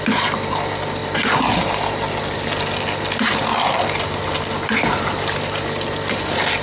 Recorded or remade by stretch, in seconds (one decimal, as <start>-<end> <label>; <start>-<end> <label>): 0.0-6.6 recorded